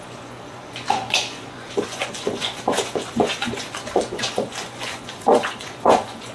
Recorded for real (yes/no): no